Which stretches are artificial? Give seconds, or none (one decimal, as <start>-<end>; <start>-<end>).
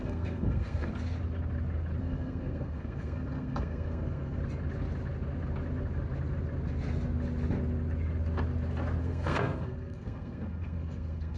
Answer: 0.0-0.9; 2.0-4.4; 9.0-11.4